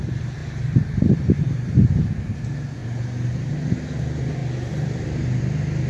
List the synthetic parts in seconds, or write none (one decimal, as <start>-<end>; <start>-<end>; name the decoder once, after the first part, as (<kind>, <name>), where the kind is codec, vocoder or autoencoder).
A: 0.4-2.0 (vocoder, BigVGAN v2)